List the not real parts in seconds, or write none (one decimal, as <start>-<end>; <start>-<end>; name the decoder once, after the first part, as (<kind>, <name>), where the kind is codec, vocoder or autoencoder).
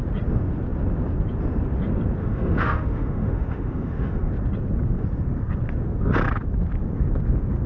2.2-4.3 (autoencoder, DAC-VAE)